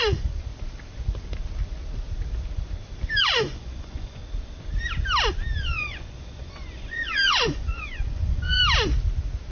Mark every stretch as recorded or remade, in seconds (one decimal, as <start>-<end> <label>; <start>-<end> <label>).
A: 0.0-0.5 remade; 0.5-3.2 recorded; 3.2-4.2 remade; 4.2-5.6 recorded; 5.6-8.6 remade; 8.6-9.5 recorded